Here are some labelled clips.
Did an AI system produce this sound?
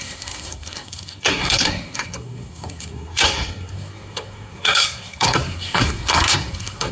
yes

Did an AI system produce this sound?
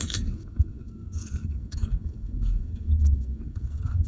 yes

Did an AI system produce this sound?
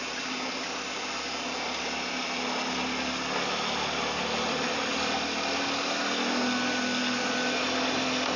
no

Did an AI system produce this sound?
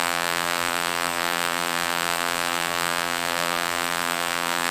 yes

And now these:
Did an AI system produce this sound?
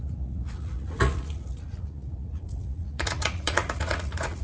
yes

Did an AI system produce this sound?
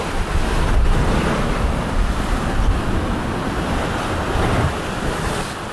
no